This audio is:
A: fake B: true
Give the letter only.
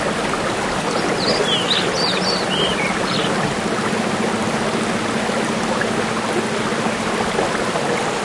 B